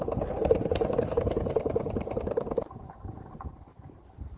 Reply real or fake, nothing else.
fake